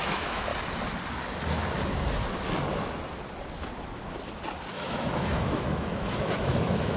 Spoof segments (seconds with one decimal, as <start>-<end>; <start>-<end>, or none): 0.0-0.5; 4.7-7.0